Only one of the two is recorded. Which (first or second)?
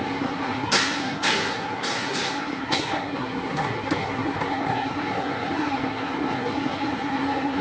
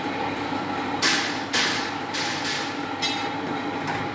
second